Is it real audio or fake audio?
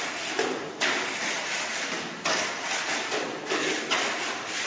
real